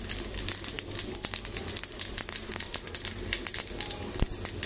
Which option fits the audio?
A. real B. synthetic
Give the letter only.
A